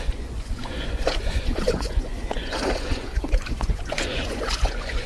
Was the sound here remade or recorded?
remade